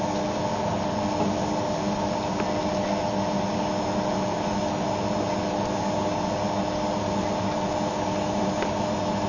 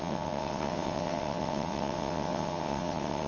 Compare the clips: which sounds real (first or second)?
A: first